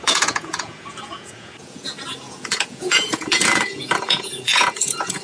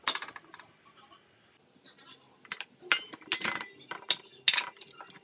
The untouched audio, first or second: second